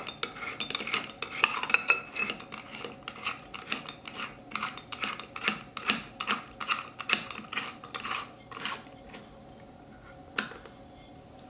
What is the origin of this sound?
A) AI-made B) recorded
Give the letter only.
B